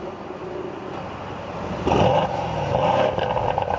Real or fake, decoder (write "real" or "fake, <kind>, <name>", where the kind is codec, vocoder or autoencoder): real